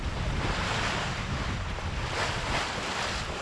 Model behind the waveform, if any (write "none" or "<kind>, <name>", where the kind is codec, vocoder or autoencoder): none